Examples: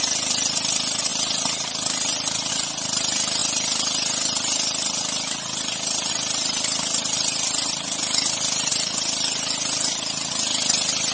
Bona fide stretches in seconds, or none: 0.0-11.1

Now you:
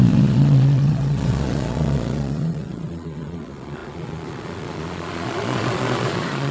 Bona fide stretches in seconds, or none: none

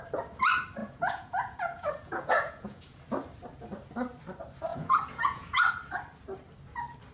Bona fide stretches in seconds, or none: 0.0-0.8; 3.0-4.7; 5.6-7.1

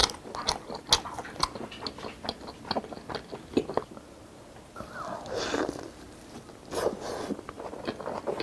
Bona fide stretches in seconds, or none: 0.0-8.4

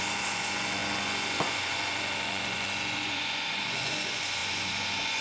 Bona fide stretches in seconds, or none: none

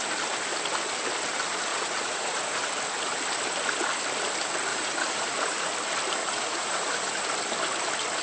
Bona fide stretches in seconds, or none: 0.0-1.7; 2.6-4.7; 5.7-6.2; 7.2-8.2

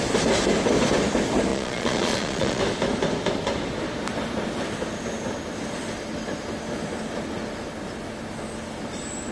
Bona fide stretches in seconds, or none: 0.0-1.5; 2.6-9.3